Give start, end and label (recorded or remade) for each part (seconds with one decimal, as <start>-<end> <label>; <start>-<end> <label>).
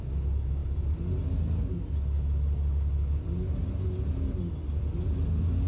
0.0-5.7 recorded